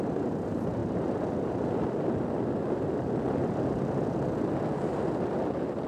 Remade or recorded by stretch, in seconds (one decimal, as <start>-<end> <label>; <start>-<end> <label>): 0.0-5.9 recorded

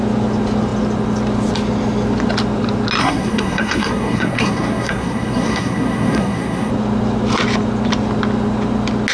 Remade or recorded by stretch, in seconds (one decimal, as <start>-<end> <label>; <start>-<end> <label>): 0.0-3.0 recorded; 3.0-6.7 remade; 6.7-9.1 recorded

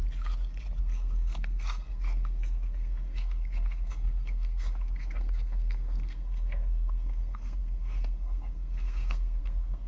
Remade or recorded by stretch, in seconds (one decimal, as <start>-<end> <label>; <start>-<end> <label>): 0.0-0.8 recorded; 0.8-9.9 remade